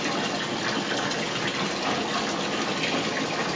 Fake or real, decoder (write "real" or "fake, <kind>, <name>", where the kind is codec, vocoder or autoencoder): real